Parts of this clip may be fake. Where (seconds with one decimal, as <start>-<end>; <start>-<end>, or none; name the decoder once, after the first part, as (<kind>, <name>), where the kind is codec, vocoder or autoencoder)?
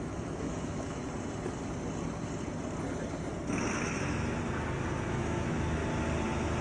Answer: 0.0-1.0 (autoencoder, DAC-VAE); 5.0-5.8